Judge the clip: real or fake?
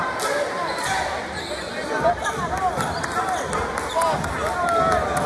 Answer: real